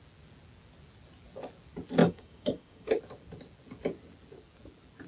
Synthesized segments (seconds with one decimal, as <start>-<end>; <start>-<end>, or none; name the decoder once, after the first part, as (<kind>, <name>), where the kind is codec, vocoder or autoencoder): 2.0-3.0 (codec, DAC)